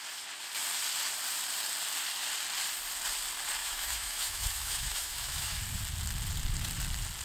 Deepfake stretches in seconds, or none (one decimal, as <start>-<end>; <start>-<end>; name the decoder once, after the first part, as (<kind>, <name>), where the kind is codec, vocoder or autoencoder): 3.6-5.6 (autoencoder, DAC-VAE)